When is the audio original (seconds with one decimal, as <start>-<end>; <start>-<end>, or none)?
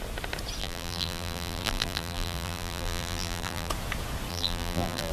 0.0-0.6; 3.7-4.3